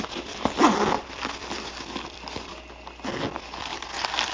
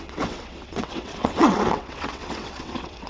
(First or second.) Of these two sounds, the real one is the first